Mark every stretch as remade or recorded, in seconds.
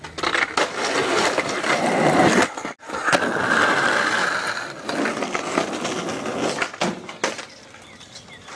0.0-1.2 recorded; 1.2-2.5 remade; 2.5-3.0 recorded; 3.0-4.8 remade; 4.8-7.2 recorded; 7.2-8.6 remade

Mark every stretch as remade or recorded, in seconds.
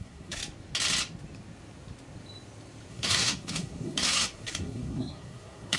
0.0-0.4 remade; 0.4-2.9 recorded; 2.9-5.8 remade